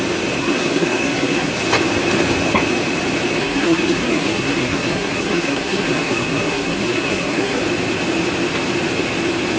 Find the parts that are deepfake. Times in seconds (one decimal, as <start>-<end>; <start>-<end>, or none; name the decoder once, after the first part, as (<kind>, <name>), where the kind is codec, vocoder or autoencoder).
0.4-1.5 (codec, SNAC); 3.4-7.6